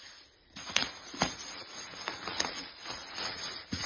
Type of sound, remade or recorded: remade